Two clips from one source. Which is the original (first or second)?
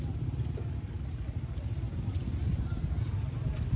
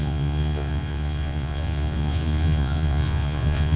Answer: first